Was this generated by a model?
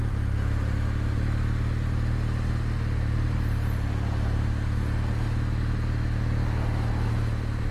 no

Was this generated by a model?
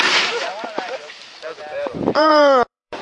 yes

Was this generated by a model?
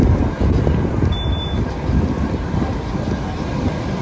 no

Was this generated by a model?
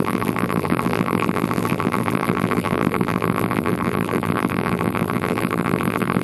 yes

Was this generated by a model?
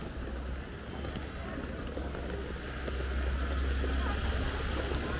no